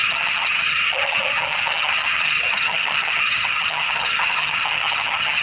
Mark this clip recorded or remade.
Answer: remade